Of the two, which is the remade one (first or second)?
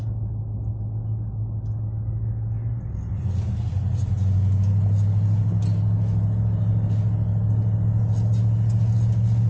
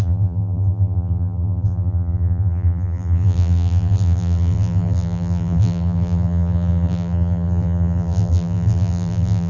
second